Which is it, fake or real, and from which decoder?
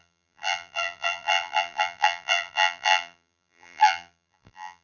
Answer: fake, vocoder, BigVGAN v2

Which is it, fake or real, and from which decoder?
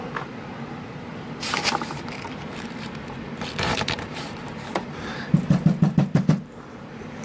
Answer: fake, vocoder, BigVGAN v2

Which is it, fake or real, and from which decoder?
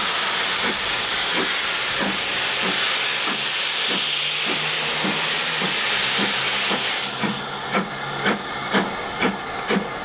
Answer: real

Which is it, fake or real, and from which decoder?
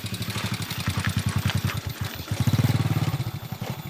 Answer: real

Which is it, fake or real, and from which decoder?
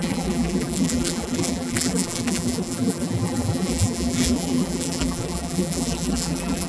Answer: fake, vocoder, BigVGAN v2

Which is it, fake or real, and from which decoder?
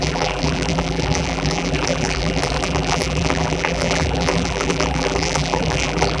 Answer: fake, vocoder, BigVGAN v2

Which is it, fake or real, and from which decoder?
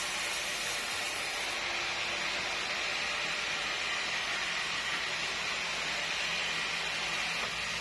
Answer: real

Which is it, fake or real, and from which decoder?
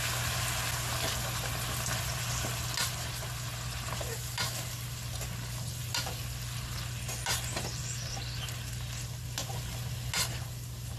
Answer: real